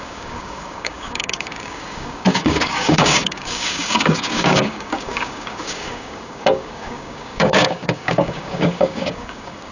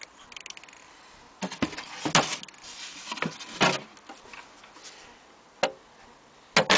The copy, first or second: first